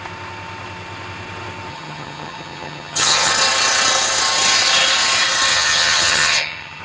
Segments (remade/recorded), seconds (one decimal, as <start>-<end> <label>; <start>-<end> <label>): 0.0-1.7 recorded; 1.7-3.3 remade; 3.3-5.5 recorded; 5.5-6.8 remade